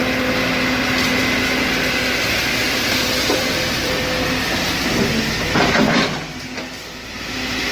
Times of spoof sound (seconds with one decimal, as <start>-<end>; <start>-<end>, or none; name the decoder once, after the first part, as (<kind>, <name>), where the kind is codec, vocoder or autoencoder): 3.0-4.7 (vocoder, BigVGAN v2)